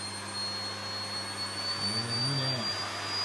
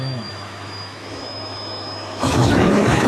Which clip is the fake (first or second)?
second